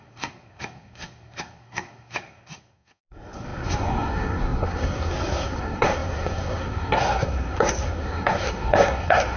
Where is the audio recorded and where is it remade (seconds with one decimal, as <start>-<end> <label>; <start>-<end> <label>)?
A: 0.0-9.4 remade